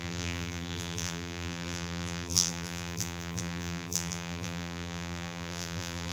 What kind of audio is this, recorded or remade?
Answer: remade